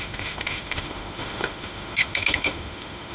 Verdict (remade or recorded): remade